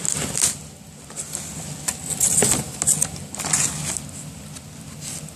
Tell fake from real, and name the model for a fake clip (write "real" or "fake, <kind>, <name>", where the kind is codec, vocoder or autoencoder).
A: real